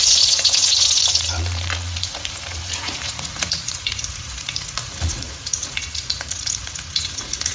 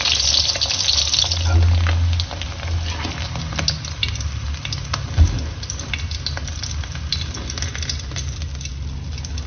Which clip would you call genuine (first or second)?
second